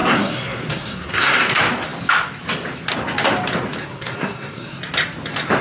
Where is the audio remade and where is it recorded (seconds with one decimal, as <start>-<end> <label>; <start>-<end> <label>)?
0.0-1.4 remade; 1.4-3.8 recorded; 3.8-4.8 remade; 4.8-5.6 recorded